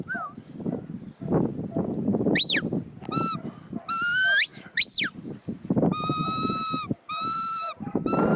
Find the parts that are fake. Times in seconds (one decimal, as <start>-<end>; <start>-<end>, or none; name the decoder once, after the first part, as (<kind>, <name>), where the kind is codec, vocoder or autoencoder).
4.5-8.4 (vocoder, BigVGAN v2)